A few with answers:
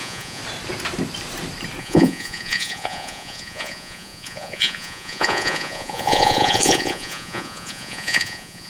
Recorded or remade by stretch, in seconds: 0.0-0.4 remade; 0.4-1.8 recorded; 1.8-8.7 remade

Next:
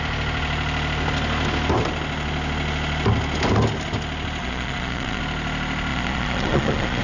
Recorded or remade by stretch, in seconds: 0.0-4.4 recorded; 4.4-5.2 remade; 5.2-5.9 recorded; 5.9-7.0 remade

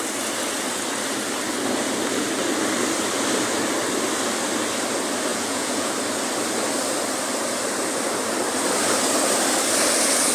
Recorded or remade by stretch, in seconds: 0.0-5.3 recorded; 5.3-5.9 remade; 5.9-10.3 recorded

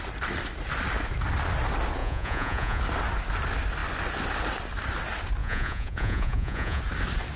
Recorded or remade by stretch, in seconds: 0.0-2.0 recorded; 2.0-2.8 remade; 2.8-5.4 recorded; 5.4-6.8 remade; 6.8-7.4 recorded